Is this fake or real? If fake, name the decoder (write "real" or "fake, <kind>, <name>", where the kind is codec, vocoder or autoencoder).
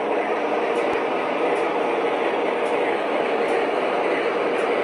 real